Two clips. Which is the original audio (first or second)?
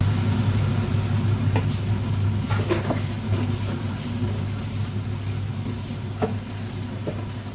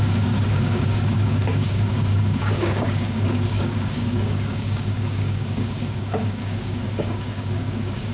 first